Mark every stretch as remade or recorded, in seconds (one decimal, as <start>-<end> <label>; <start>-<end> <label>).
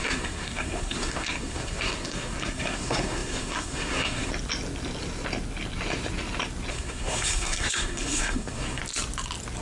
0.0-4.3 remade; 4.3-6.7 recorded; 6.7-8.8 remade; 8.8-9.6 recorded